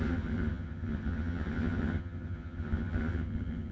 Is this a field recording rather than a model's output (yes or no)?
no